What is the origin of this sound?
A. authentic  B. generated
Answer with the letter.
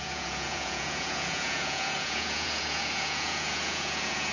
B